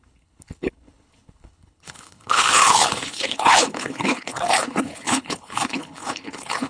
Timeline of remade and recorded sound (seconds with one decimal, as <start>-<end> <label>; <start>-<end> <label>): 0.0-6.7 remade

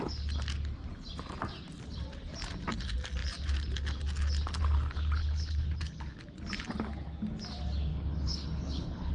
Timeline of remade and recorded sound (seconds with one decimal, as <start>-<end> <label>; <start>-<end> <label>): 0.0-5.2 recorded; 5.2-6.2 remade; 6.2-7.9 recorded; 7.9-9.1 remade